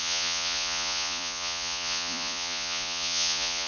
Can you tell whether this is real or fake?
fake